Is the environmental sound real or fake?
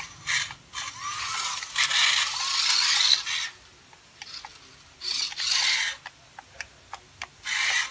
real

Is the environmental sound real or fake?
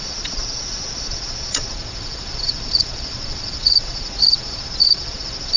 fake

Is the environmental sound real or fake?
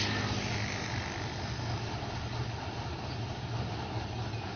real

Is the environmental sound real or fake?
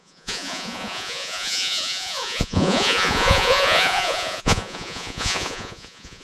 fake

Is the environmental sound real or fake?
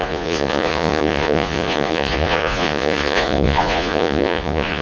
fake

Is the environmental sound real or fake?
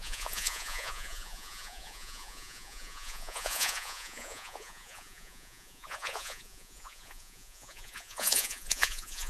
fake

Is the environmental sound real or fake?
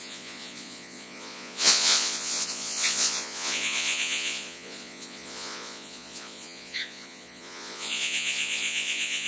fake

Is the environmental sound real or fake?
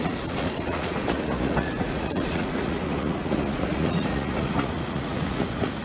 fake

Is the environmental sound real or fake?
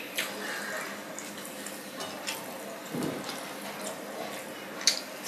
real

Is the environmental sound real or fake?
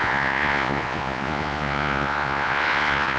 fake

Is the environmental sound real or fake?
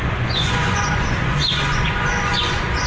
fake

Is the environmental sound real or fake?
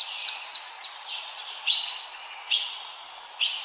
fake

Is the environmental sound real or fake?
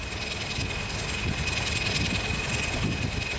real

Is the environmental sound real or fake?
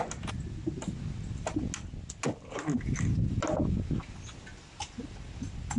real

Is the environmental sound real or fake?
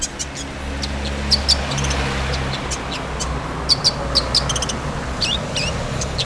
real